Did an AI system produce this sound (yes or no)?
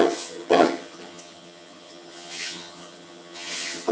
yes